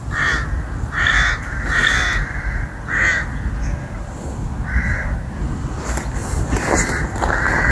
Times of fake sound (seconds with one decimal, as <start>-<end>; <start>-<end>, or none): 6.2-7.0